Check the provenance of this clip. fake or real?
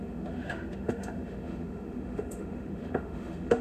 fake